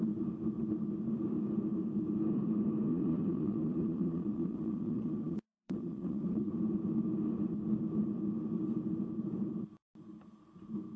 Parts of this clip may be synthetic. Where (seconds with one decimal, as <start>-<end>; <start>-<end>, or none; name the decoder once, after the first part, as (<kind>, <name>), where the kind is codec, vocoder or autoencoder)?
2.9-6.5 (vocoder, Vocos)